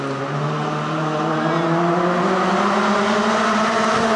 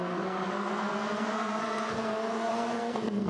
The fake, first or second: second